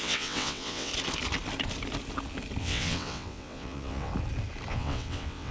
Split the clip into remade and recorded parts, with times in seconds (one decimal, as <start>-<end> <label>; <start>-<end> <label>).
0.0-0.9 remade; 0.9-2.6 recorded; 2.6-4.1 remade; 4.1-4.7 recorded; 4.7-5.5 remade